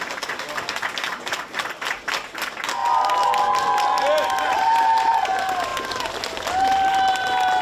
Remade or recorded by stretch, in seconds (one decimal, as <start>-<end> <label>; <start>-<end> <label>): 0.0-7.6 recorded